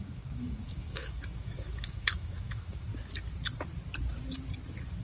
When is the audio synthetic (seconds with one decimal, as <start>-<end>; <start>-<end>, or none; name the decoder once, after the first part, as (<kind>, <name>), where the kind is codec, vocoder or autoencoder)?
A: 0.0-2.9 (autoencoder, DAC-VAE)